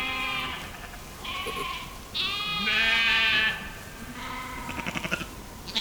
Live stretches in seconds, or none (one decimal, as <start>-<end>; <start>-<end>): 0.0-5.8